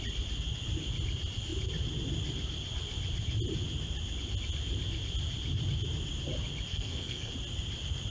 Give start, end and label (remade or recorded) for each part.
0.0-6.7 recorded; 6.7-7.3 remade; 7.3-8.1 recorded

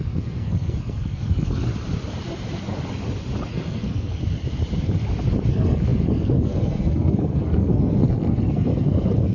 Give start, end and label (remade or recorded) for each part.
0.0-1.7 remade; 1.7-3.5 recorded; 3.5-4.2 remade; 4.2-5.5 recorded; 5.5-9.3 remade

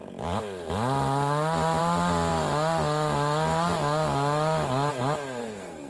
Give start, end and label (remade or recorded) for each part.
0.0-5.4 recorded; 5.4-5.9 remade

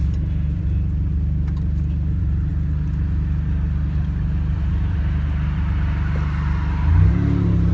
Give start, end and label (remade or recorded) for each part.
0.0-7.7 recorded